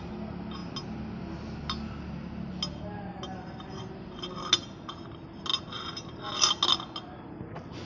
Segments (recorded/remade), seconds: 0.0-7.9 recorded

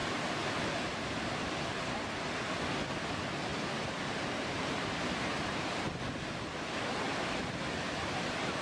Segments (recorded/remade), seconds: 0.0-8.6 recorded

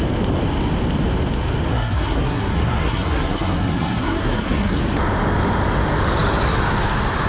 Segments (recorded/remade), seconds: 0.0-1.7 recorded; 1.7-4.8 remade; 4.8-7.3 recorded

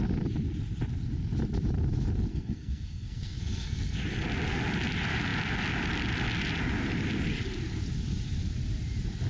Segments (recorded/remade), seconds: 0.0-2.3 recorded; 2.3-4.0 remade; 4.0-9.3 recorded

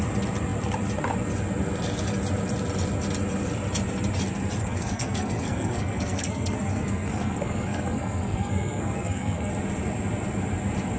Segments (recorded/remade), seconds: 0.0-4.6 recorded; 4.6-9.5 remade; 9.5-11.0 recorded